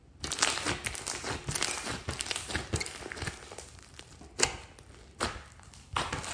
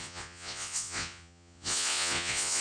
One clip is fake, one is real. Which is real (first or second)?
first